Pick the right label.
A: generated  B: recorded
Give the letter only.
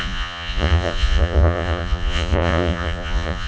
A